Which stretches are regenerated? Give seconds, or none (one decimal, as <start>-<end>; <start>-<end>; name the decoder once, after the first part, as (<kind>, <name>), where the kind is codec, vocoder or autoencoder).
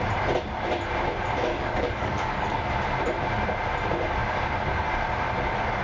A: 1.5-2.6 (codec, DAC)